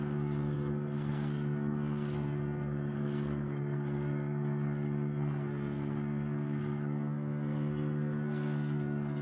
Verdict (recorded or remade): remade